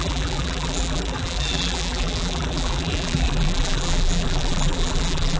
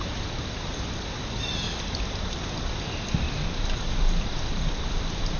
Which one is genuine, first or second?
second